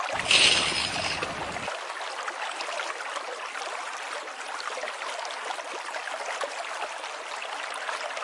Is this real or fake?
real